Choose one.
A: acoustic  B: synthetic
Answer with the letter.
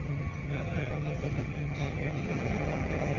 B